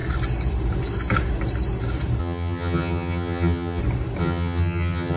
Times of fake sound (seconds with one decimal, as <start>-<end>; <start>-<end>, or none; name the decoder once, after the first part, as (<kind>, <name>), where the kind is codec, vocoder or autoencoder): 2.2-3.8 (vocoder, HiFi-GAN); 4.2-5.2